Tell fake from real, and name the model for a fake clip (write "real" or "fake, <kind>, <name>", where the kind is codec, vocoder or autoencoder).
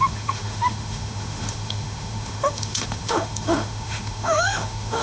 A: fake, autoencoder, DAC-VAE